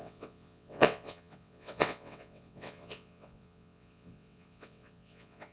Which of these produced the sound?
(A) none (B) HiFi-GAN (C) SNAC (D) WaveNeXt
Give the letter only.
D